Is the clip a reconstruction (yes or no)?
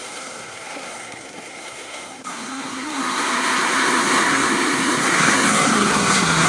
yes